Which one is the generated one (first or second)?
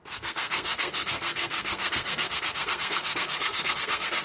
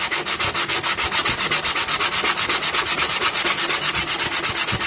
first